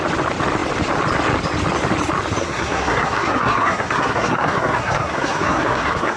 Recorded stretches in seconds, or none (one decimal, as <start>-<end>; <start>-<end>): 0.0-2.4